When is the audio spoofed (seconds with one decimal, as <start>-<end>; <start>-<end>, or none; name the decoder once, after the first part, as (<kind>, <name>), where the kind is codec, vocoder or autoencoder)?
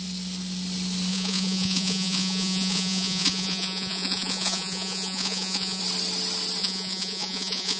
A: 1.1-5.8 (vocoder, Vocos); 6.6-7.8